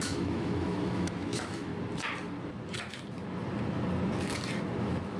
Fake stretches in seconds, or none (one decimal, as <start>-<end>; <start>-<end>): 0.0-1.7; 4.8-5.2